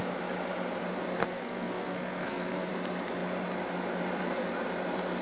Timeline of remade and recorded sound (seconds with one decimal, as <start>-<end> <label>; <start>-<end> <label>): 0.0-1.2 recorded; 1.2-2.7 remade; 2.7-5.2 recorded